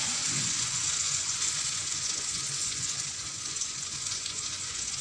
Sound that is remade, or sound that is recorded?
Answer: remade